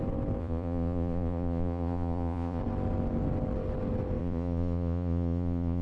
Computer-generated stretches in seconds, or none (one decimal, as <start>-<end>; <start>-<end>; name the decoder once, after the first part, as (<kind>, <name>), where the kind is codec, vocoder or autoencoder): 0.4-2.6 (vocoder, Vocos); 4.2-5.8